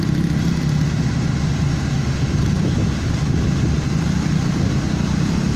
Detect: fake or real real